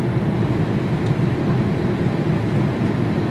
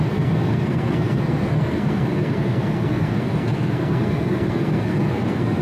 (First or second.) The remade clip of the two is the second